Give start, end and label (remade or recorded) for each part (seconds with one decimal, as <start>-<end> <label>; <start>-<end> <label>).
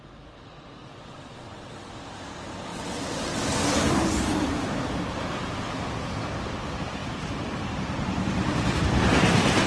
0.0-0.9 recorded; 0.9-1.9 remade; 1.9-2.7 recorded; 2.7-3.4 remade; 3.4-9.7 recorded